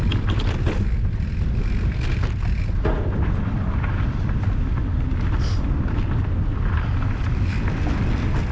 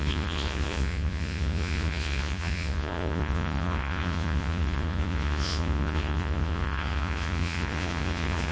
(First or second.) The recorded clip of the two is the first